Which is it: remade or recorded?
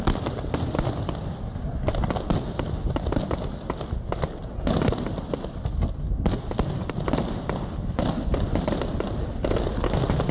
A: recorded